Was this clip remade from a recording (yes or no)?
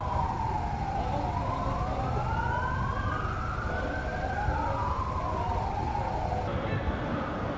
no